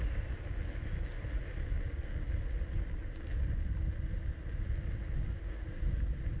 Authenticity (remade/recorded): recorded